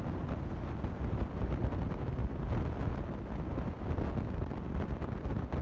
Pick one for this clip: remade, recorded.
recorded